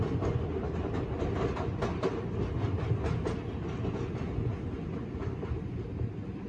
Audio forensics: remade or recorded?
recorded